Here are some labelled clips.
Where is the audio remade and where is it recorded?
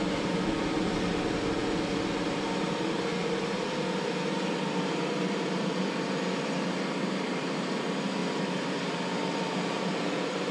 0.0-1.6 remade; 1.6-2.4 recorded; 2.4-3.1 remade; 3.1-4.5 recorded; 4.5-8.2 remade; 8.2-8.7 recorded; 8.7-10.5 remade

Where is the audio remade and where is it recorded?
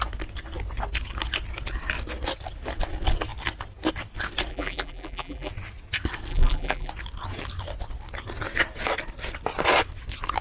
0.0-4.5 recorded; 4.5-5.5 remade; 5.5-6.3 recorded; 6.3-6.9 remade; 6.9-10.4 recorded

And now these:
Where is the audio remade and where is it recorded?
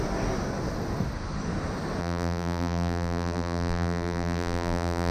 0.0-2.0 recorded; 2.0-5.1 remade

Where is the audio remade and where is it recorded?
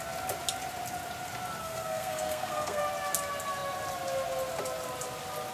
0.0-1.6 recorded; 1.6-2.8 remade; 2.8-5.5 recorded